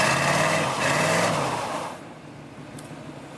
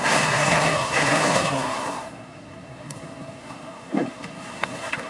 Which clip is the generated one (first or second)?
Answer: second